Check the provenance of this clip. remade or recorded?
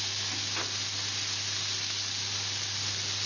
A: recorded